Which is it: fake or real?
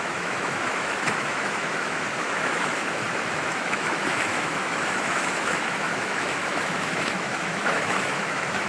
fake